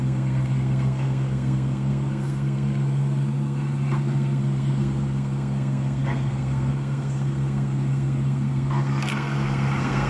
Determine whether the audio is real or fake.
fake